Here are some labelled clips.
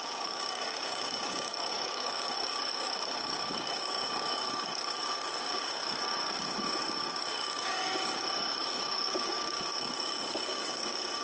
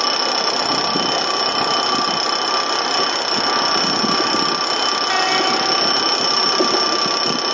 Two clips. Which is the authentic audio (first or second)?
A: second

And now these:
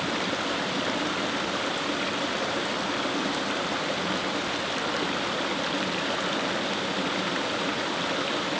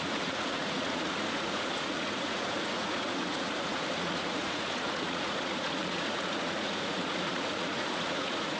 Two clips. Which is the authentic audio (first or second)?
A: first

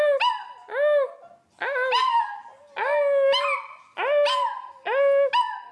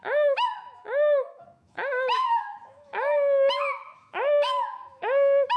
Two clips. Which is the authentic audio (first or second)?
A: first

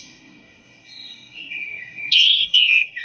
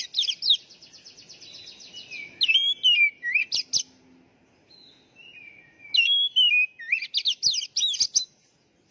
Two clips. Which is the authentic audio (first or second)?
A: second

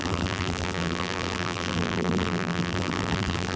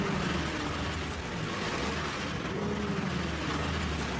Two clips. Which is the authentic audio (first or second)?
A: second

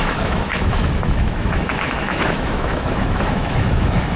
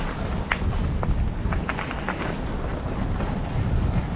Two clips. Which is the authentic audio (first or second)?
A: second